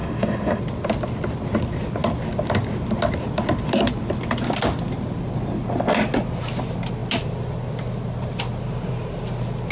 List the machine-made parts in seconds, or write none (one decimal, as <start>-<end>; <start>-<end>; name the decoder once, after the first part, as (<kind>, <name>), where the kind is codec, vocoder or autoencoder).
0.0-0.6 (autoencoder, DAC-VAE)